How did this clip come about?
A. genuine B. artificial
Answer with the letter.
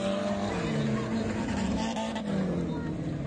A